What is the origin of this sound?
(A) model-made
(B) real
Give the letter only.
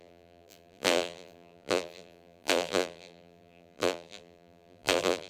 A